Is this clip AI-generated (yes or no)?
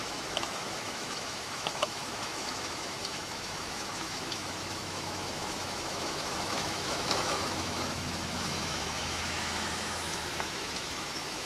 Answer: yes